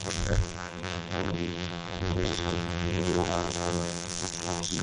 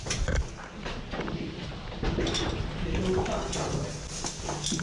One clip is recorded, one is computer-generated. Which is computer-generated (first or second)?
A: first